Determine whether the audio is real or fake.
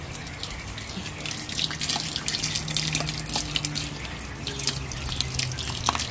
real